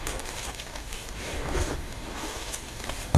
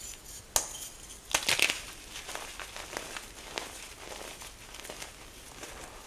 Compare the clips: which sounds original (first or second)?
second